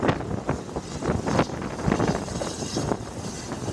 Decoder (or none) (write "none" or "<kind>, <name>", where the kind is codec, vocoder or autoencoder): none